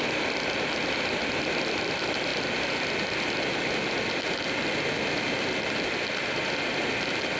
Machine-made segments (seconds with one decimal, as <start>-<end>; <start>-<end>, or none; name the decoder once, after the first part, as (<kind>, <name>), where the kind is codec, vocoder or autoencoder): none